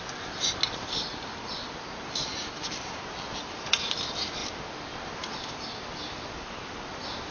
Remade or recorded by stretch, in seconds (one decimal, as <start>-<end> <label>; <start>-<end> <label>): 0.0-7.3 recorded